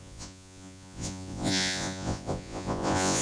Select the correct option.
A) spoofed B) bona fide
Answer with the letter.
A